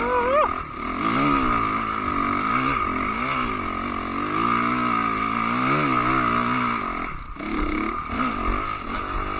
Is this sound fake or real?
real